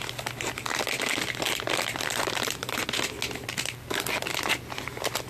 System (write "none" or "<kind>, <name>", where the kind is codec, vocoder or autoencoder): none